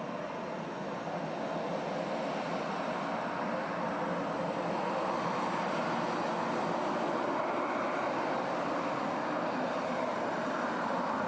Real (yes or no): yes